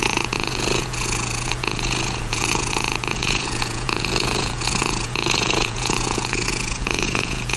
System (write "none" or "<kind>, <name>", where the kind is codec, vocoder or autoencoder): vocoder, Vocos